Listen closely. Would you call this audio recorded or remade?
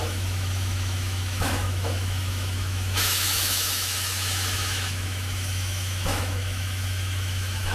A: remade